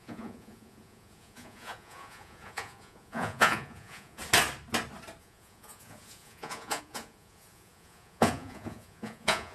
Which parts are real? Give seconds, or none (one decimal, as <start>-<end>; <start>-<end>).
4.2-5.2